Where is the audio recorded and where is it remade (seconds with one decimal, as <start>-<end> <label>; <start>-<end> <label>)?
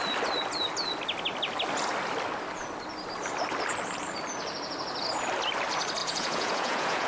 0.0-6.0 recorded; 6.0-7.1 remade